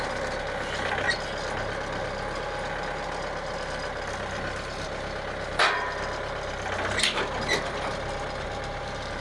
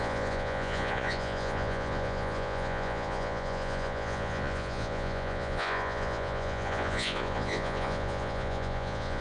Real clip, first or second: first